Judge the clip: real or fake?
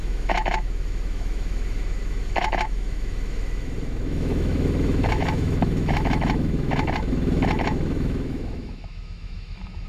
fake